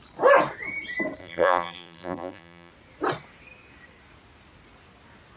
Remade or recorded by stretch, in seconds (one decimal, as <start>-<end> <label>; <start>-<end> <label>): 0.0-1.2 recorded; 1.2-2.7 remade; 2.7-5.4 recorded